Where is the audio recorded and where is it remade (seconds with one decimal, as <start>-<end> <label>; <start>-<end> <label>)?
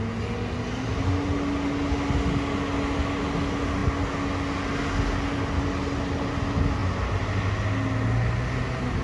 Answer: 0.0-9.0 recorded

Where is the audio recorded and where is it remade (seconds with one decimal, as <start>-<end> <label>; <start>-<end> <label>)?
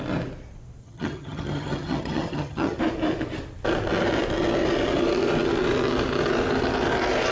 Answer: 0.0-0.8 recorded; 0.8-2.8 remade; 2.8-7.3 recorded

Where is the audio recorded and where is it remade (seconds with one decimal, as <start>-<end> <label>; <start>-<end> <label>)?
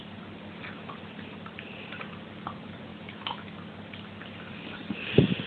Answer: 0.0-2.9 recorded; 2.9-3.5 remade; 3.5-5.5 recorded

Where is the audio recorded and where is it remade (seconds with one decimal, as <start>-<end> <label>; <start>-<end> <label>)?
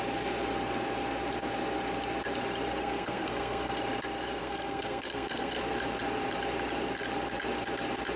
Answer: 0.0-2.8 recorded; 2.8-3.7 remade; 3.7-4.4 recorded; 4.4-5.6 remade; 5.6-8.2 recorded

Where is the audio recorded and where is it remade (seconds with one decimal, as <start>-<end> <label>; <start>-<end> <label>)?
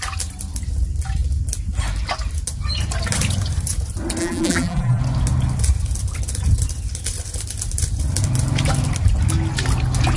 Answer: 0.0-4.2 recorded; 4.2-5.0 remade; 5.0-10.2 recorded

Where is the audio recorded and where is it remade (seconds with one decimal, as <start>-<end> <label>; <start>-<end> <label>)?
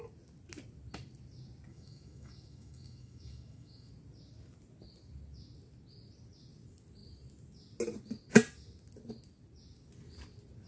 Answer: 0.0-1.7 recorded; 1.7-3.9 remade; 3.9-10.7 recorded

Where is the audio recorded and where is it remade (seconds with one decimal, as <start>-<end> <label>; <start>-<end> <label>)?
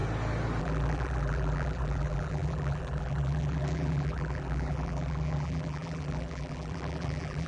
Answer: 0.0-0.6 recorded; 0.6-7.5 remade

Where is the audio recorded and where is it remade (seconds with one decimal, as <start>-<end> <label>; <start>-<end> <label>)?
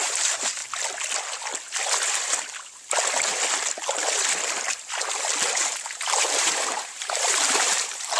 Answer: 0.0-0.6 remade; 0.6-5.2 recorded; 5.2-8.2 remade